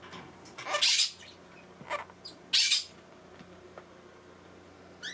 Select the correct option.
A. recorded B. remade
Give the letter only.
A